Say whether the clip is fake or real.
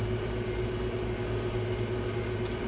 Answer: real